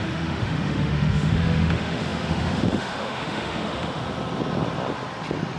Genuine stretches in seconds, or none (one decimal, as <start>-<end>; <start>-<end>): 4.0-5.6